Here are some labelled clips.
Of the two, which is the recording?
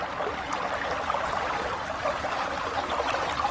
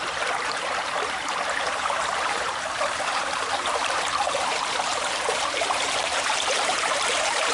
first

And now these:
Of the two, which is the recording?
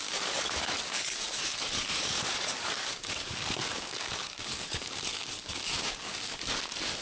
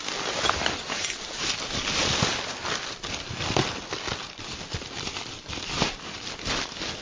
second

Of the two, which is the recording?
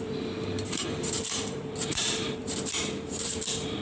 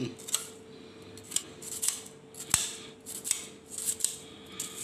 second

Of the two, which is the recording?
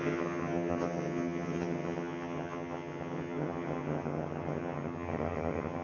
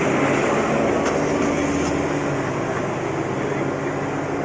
second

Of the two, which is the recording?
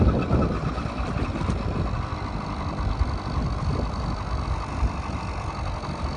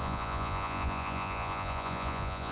first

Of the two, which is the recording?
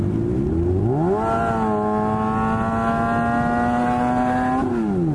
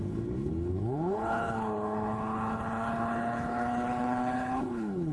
first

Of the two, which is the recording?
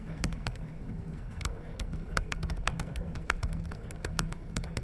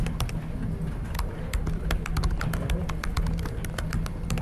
second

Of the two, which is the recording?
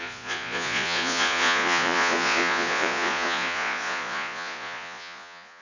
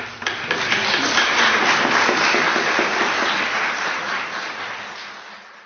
second